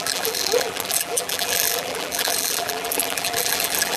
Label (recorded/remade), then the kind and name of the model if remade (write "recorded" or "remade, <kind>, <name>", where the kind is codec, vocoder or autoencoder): remade, vocoder, BigVGAN v2